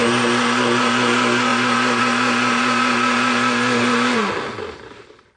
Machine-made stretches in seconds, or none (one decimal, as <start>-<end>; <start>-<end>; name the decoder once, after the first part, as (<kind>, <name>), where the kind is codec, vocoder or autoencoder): none